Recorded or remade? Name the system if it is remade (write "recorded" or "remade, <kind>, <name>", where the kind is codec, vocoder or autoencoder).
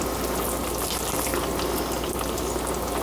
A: recorded